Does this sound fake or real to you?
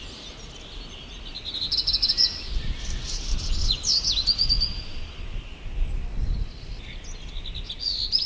real